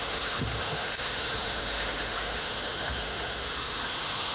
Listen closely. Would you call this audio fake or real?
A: fake